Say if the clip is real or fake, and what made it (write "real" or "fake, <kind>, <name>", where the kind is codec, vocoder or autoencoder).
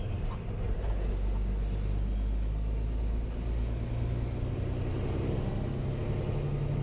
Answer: real